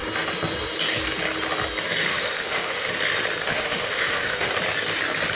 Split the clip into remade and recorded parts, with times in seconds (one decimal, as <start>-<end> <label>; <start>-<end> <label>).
0.0-2.1 recorded; 2.1-2.9 remade; 2.9-3.4 recorded; 3.4-4.5 remade; 4.5-5.3 recorded